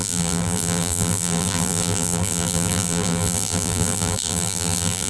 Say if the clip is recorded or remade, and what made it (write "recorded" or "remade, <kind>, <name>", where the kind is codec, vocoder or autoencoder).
remade, vocoder, BigVGAN v2